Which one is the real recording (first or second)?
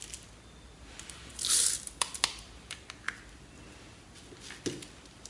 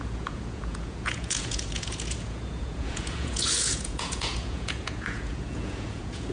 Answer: first